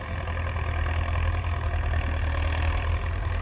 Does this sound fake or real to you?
real